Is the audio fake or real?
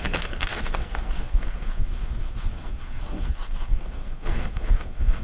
fake